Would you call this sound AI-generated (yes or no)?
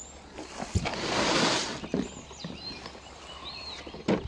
no